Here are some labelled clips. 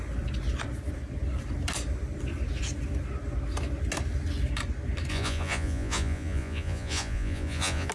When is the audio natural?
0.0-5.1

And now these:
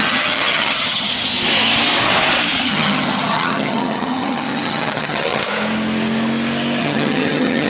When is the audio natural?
1.1-2.6; 5.4-6.8

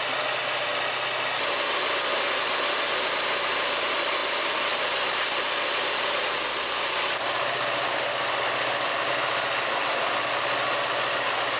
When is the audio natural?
0.0-4.2; 9.1-11.6

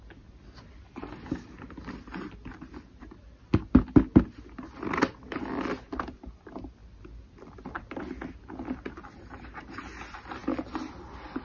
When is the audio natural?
0.0-11.4